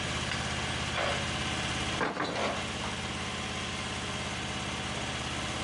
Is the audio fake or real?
real